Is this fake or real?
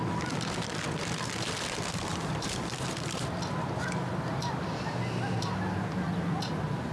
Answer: real